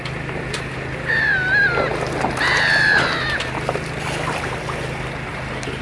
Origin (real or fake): fake